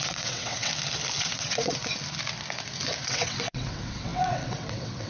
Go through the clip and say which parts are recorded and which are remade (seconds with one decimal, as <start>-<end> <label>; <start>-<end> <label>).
0.0-0.7 remade; 0.7-1.2 recorded; 1.2-1.8 remade; 1.8-3.1 recorded; 3.1-5.1 remade